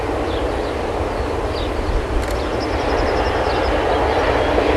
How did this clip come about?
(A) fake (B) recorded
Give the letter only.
B